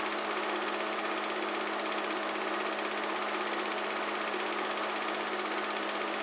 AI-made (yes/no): no